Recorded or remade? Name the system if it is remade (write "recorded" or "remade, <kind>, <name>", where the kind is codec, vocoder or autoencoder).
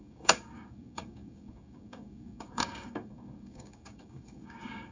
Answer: remade, codec, DAC